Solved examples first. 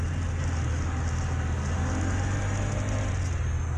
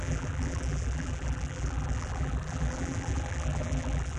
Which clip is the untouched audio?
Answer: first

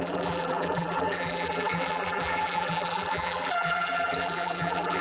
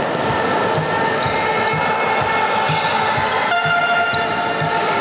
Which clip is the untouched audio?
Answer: second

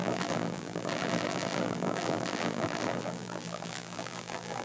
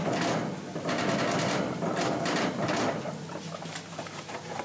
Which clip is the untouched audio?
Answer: second